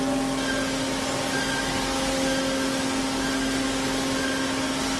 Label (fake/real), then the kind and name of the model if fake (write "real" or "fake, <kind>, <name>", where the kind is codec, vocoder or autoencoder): real